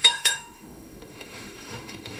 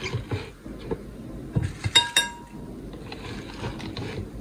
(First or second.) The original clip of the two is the second